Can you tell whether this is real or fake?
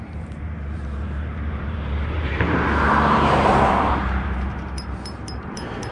fake